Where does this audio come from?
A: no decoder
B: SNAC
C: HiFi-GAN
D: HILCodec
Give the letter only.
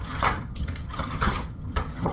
C